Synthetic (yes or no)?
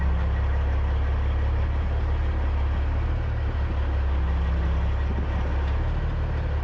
no